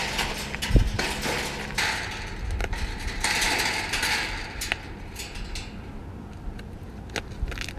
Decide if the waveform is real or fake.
real